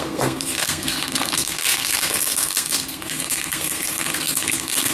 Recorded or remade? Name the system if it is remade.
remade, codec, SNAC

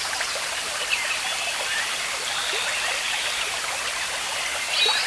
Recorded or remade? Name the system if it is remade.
recorded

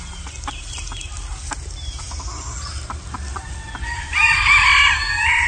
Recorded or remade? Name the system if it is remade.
recorded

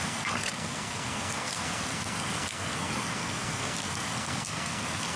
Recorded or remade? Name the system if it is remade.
remade, codec, SNAC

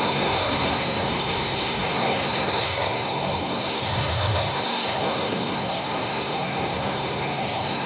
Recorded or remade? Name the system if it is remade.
remade, codec, SNAC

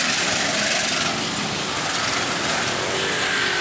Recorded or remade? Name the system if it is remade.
recorded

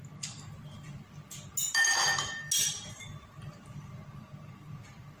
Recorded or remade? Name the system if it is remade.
recorded